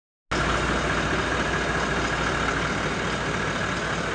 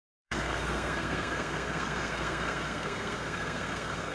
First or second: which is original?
first